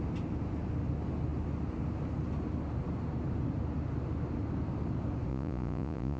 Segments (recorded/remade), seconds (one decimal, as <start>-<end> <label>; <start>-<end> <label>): 0.0-5.3 recorded; 5.3-6.2 remade

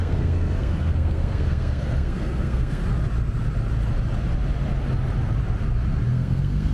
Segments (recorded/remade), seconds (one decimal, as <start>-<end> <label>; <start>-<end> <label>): 0.0-2.8 remade; 2.8-6.1 recorded; 6.1-6.7 remade